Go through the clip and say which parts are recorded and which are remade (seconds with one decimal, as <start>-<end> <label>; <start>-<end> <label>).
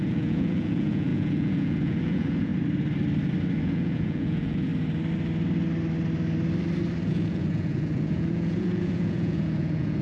0.0-2.5 remade; 2.5-3.6 recorded; 3.6-4.7 remade; 4.7-7.1 recorded; 7.1-10.0 remade